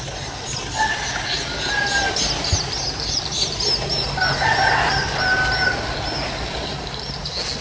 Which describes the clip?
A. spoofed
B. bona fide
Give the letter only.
B